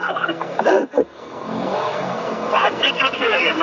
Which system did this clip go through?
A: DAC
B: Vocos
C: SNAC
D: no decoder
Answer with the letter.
C